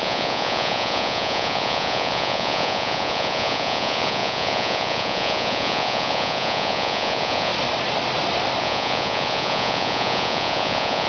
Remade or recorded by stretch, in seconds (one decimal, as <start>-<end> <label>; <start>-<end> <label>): 0.0-7.5 remade; 7.5-8.6 recorded; 8.6-11.1 remade